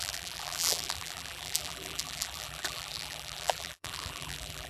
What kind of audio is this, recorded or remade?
remade